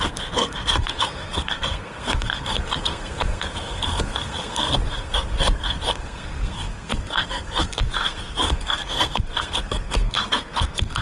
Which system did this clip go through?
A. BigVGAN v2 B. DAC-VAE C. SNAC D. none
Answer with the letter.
C